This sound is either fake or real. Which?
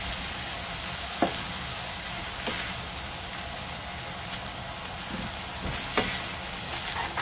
real